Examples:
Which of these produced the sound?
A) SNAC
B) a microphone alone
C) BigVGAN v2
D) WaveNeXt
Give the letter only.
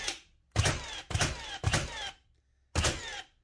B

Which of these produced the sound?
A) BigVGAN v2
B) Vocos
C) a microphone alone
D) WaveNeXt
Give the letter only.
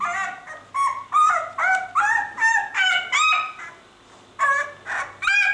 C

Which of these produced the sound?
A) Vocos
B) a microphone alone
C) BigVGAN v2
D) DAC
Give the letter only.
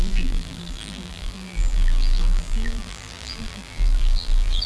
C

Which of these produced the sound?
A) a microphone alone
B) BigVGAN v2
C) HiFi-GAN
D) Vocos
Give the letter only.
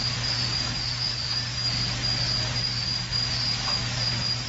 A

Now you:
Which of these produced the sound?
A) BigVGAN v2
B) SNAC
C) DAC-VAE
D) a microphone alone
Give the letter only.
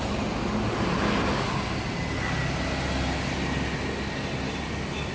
D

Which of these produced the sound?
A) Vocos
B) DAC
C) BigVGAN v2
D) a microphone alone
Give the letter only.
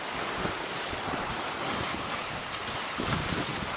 D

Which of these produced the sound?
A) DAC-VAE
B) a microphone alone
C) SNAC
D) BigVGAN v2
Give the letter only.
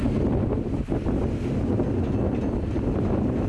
B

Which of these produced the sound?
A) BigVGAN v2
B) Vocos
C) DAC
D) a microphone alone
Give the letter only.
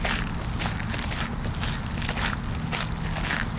D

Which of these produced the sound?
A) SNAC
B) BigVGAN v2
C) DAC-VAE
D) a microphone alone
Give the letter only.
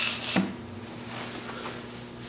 D